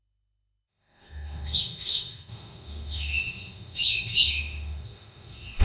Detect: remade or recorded remade